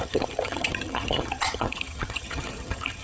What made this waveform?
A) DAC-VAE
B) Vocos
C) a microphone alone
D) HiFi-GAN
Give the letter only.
D